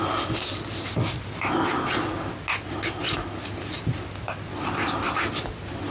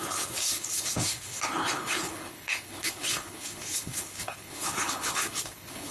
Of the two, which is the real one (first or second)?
first